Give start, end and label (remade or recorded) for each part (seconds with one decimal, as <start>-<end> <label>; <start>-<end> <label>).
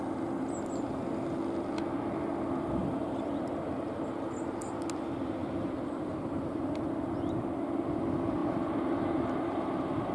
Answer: 0.0-2.8 recorded; 2.8-3.9 remade; 3.9-5.4 recorded; 5.4-6.9 remade; 6.9-10.1 recorded